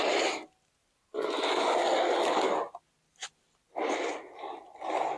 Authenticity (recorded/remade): recorded